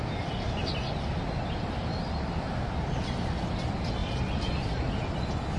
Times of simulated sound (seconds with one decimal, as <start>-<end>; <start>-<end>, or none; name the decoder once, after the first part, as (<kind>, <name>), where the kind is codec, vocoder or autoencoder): none